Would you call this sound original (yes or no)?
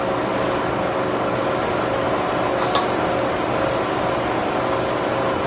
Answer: yes